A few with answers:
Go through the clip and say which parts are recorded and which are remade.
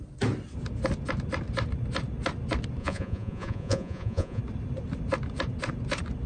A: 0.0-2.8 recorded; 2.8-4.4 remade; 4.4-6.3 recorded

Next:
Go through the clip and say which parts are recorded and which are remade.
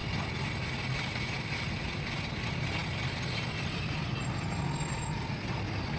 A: 0.0-6.0 recorded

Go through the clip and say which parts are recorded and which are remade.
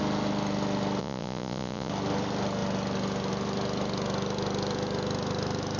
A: 0.0-1.0 recorded; 1.0-1.9 remade; 1.9-5.8 recorded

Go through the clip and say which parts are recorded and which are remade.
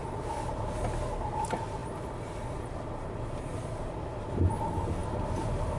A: 0.0-5.8 recorded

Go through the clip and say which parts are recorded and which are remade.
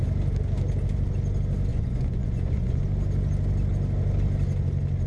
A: 0.0-1.7 recorded; 1.7-2.8 remade; 2.8-5.1 recorded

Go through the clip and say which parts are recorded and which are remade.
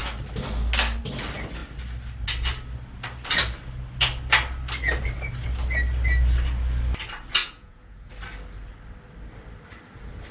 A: 0.0-7.4 recorded; 7.4-8.1 remade; 8.1-10.3 recorded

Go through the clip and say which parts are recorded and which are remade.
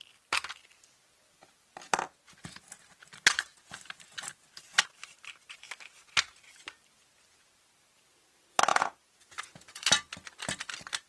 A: 0.0-8.7 recorded; 8.7-9.8 remade; 9.8-11.1 recorded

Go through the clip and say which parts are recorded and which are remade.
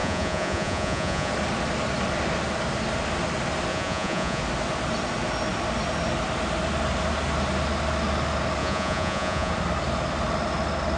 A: 0.0-1.3 remade; 1.3-3.7 recorded; 3.7-4.4 remade; 4.4-8.6 recorded; 8.6-9.5 remade; 9.5-11.0 recorded